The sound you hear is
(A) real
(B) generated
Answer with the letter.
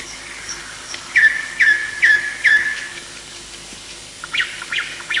B